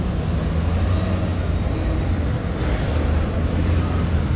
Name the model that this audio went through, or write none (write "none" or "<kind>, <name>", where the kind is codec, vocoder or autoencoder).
none